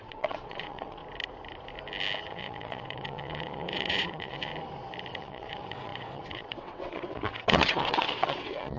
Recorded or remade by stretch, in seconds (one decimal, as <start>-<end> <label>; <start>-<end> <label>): 0.0-1.0 remade; 1.0-2.3 recorded; 2.3-4.5 remade; 4.5-5.1 recorded; 5.1-8.8 remade